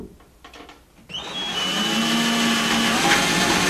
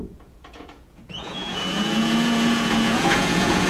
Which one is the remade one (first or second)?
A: second